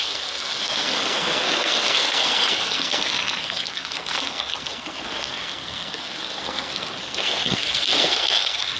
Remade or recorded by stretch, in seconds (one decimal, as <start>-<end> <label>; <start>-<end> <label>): 0.0-8.8 remade